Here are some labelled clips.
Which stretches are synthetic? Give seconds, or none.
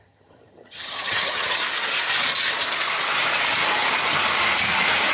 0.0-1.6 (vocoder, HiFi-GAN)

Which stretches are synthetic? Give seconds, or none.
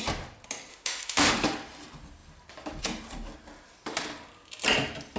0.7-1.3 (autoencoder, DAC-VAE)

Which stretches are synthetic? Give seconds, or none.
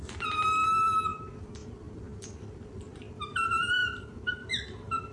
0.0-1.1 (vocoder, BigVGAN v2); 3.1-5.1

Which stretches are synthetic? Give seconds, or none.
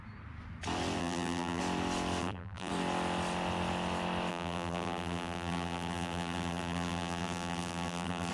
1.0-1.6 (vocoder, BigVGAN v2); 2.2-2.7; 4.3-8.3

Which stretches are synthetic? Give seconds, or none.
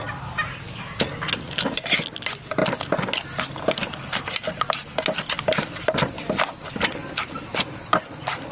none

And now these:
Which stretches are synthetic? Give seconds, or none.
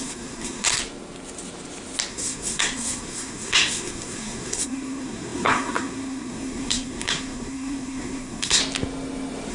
0.0-0.8 (codec, SNAC); 2.1-8.6